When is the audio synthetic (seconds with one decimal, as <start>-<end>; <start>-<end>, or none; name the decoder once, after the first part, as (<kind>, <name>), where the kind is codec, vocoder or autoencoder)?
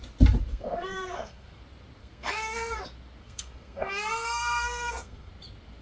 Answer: 0.5-1.6 (codec, SNAC); 2.0-2.8; 3.2-5.3